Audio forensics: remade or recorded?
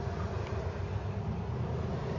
recorded